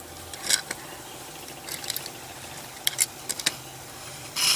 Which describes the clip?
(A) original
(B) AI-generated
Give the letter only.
B